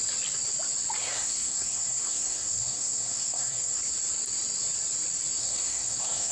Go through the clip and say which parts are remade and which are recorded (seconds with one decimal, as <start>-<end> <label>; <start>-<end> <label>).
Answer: 0.0-1.0 recorded; 1.0-3.8 remade; 3.8-5.4 recorded; 5.4-6.3 remade